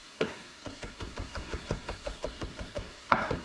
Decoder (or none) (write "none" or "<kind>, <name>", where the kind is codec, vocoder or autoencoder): codec, SNAC